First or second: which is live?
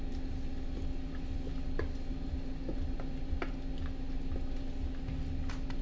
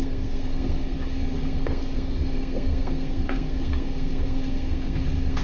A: first